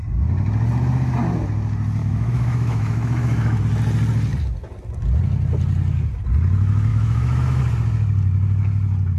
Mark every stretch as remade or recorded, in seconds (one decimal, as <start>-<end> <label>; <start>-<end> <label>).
0.0-2.0 recorded; 2.0-3.6 remade; 3.6-6.9 recorded; 6.9-7.6 remade; 7.6-9.2 recorded